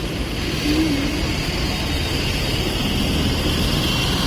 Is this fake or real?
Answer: real